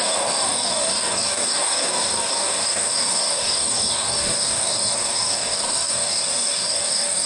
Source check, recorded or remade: remade